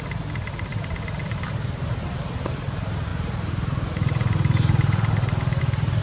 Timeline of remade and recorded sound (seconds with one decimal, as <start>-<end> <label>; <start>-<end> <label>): 0.0-0.7 remade; 0.7-1.2 recorded; 1.2-6.0 remade